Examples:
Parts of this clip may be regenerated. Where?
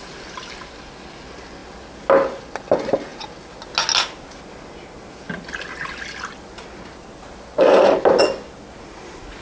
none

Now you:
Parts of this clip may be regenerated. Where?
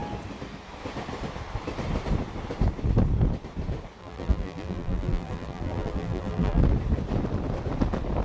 4.0-6.6 (vocoder, BigVGAN v2)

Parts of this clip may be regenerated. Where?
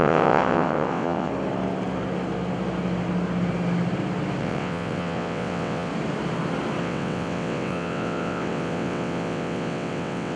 0.0-1.3 (vocoder, WaveNeXt); 4.4-5.9; 6.8-10.4